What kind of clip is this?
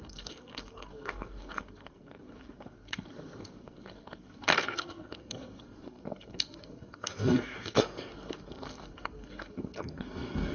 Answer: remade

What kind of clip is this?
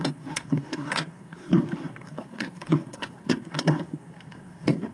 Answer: remade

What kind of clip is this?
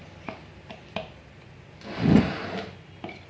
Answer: recorded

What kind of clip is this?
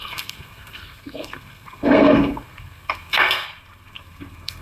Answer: remade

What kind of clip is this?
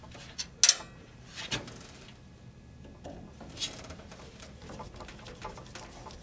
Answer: recorded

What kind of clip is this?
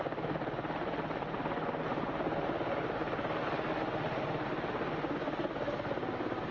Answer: recorded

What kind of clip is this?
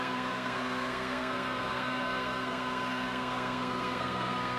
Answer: remade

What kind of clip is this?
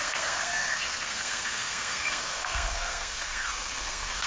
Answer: remade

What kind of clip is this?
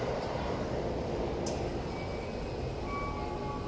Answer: recorded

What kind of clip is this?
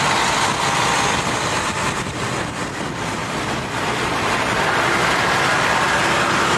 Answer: recorded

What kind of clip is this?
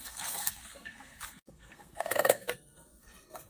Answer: remade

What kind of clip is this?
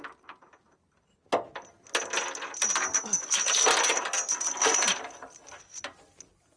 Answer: recorded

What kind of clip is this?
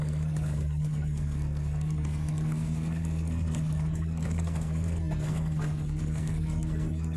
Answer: remade